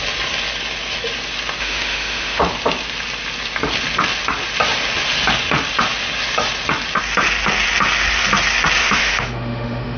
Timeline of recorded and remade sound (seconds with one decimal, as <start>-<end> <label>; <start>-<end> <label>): 0.0-1.6 recorded; 1.6-2.4 remade; 2.4-8.8 recorded; 8.8-10.0 remade